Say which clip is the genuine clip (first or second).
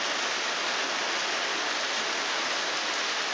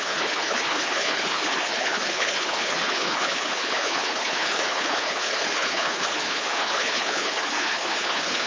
first